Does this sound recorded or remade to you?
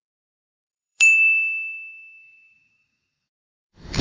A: remade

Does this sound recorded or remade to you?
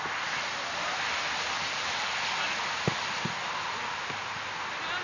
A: recorded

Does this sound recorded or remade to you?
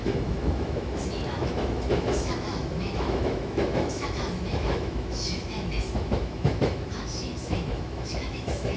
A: remade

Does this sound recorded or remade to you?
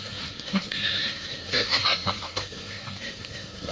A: remade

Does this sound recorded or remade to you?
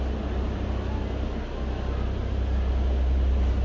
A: recorded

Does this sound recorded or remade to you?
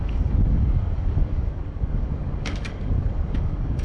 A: remade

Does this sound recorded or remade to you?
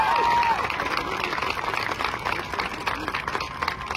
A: recorded